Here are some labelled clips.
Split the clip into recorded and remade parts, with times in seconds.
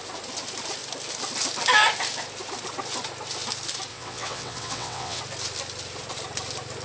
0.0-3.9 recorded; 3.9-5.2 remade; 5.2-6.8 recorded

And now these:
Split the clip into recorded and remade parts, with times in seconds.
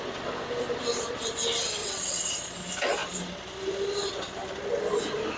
0.0-1.8 recorded; 1.8-2.3 remade; 2.3-5.4 recorded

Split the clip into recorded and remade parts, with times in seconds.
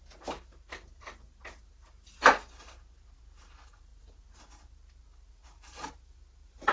0.0-6.7 recorded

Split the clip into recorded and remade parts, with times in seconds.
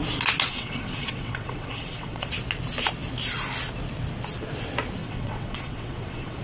0.0-0.5 recorded; 0.5-2.3 remade; 2.3-5.0 recorded; 5.0-6.4 remade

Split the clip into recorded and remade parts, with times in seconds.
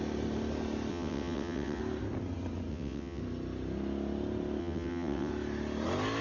0.0-0.9 recorded; 0.9-1.8 remade; 1.8-2.7 recorded; 2.7-3.2 remade; 3.2-4.6 recorded; 4.6-5.3 remade; 5.3-6.2 recorded